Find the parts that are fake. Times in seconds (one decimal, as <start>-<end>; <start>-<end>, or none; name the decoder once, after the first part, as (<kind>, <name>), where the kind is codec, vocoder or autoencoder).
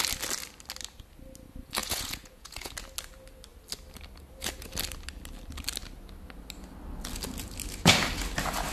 1.8-2.7 (vocoder, Vocos)